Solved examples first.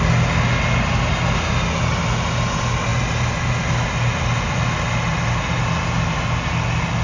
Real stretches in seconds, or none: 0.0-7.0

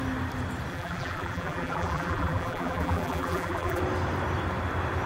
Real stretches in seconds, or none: 0.0-0.7; 3.8-5.1

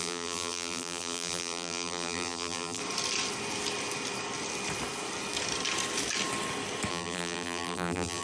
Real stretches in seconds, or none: 2.8-6.9